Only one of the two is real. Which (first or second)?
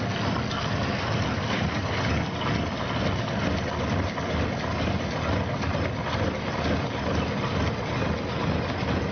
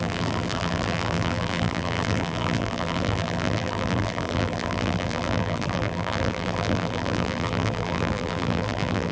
first